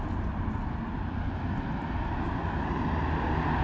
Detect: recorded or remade recorded